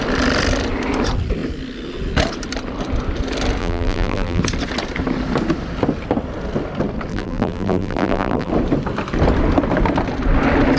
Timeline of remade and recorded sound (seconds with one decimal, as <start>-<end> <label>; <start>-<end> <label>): 0.0-3.6 recorded; 3.6-4.4 remade; 4.4-7.1 recorded; 7.1-8.5 remade; 8.5-10.8 recorded